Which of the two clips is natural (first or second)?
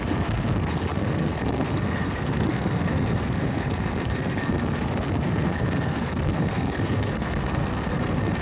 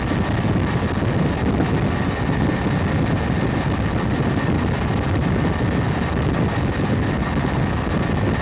second